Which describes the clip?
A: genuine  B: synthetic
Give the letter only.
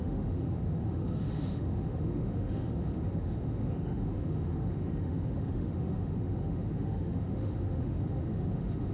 B